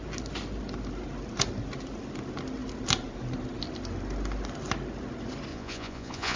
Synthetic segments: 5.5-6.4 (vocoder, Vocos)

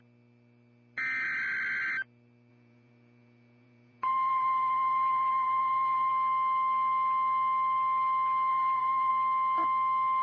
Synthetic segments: 2.5-6.1 (vocoder, Vocos); 8.5-9.1

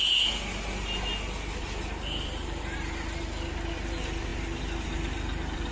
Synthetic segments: none